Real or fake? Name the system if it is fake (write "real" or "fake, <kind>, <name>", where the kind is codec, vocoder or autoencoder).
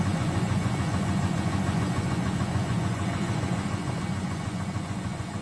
fake, vocoder, Vocos